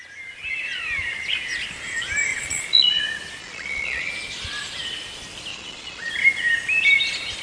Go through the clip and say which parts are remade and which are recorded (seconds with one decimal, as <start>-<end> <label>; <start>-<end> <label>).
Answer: 0.0-2.3 recorded; 2.3-3.0 remade; 3.0-3.4 recorded; 3.4-4.1 remade; 4.1-5.5 recorded; 5.5-6.1 remade; 6.1-7.4 recorded